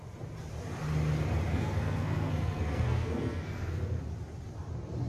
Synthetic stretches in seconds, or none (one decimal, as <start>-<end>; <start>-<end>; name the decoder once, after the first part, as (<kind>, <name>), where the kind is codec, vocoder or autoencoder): 1.5-4.0 (codec, SNAC)